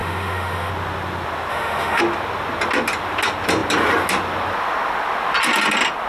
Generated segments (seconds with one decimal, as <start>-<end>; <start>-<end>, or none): 0.0-0.7; 1.5-2.0